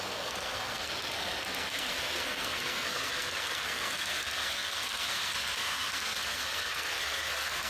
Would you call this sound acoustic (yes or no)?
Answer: no